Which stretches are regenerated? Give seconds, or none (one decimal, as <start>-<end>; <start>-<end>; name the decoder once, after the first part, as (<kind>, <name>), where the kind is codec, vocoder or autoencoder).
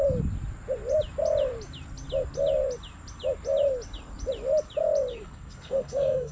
5.1-6.3 (codec, SNAC)